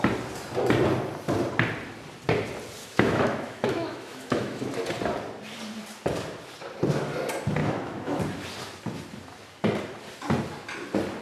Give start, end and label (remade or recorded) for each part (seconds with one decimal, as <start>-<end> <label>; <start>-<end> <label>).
0.0-2.8 recorded; 2.8-4.7 remade; 4.7-7.6 recorded; 7.6-8.2 remade; 8.2-11.2 recorded